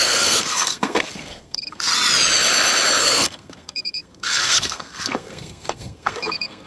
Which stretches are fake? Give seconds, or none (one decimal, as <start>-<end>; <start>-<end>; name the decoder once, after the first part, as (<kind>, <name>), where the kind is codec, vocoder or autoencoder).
0.0-1.9 (codec, SNAC); 3.0-6.7